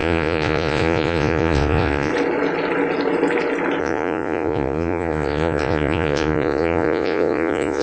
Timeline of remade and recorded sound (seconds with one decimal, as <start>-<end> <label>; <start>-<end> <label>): 0.0-2.1 remade; 2.1-3.8 recorded; 3.8-7.8 remade